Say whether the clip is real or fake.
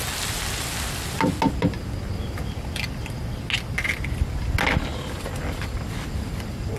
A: real